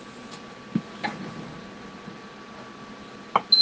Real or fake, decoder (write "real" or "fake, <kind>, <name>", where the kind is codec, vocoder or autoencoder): real